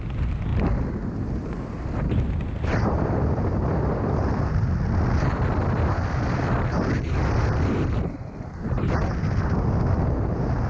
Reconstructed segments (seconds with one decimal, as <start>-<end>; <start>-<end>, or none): 0.5-4.7